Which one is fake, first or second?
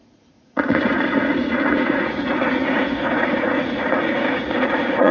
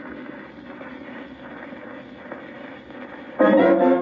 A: first